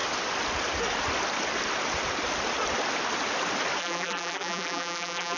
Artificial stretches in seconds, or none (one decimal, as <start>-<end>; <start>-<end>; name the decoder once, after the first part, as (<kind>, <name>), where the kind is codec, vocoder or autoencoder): 3.8-5.4 (vocoder, BigVGAN v2)